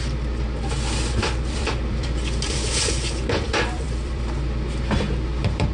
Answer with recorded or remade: remade